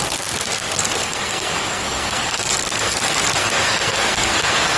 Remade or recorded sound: remade